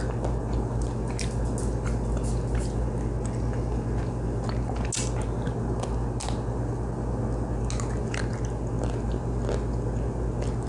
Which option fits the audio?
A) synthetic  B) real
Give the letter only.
B